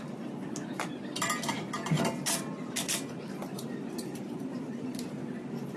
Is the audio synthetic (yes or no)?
no